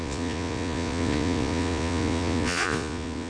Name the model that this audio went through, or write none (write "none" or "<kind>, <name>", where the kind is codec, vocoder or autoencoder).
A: vocoder, Vocos